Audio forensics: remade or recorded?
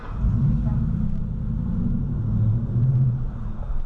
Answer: remade